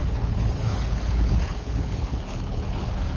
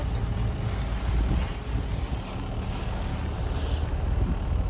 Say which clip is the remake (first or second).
first